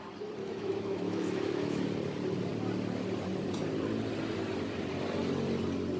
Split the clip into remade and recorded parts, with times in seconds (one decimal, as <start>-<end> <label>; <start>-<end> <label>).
0.0-0.4 recorded; 0.4-1.8 remade; 1.8-6.0 recorded